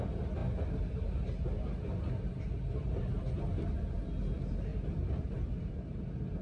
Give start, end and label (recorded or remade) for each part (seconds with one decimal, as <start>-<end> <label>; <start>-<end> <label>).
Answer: 0.0-6.4 recorded